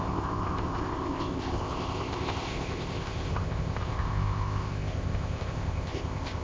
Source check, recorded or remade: remade